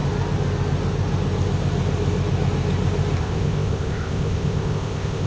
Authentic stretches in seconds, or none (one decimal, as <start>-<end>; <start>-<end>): 0.0-3.2